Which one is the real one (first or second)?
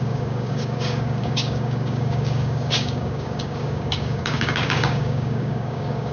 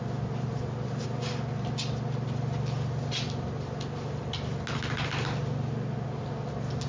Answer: second